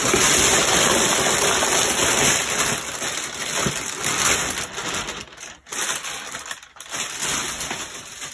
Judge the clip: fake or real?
real